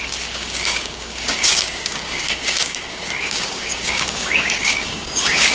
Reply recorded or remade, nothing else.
remade